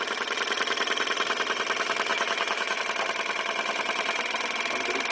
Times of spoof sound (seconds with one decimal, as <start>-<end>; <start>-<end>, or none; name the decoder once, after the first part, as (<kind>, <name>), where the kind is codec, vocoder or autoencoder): 2.1-2.8 (autoencoder, DAC-VAE)